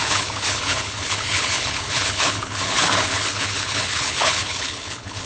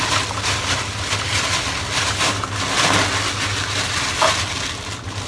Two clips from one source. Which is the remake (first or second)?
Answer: first